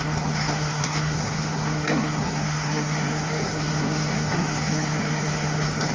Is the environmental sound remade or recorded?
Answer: remade